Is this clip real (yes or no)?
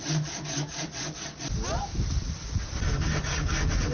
yes